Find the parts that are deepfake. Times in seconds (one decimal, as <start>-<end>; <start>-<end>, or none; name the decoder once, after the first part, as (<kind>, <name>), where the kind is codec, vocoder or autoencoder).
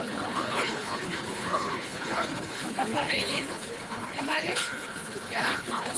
0.0-6.0 (codec, HILCodec)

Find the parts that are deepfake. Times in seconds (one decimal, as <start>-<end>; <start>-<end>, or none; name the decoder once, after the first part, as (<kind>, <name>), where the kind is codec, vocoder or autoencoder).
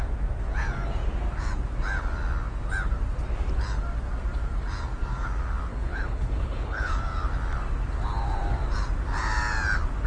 5.7-6.9 (codec, HILCodec)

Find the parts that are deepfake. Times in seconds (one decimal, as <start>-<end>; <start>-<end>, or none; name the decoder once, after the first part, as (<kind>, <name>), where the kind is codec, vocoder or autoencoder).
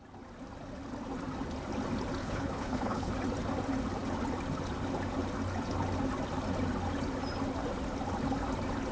2.2-3.1 (codec, HILCodec)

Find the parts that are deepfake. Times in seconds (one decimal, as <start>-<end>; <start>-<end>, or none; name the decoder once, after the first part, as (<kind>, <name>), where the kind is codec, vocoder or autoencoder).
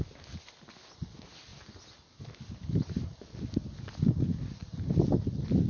none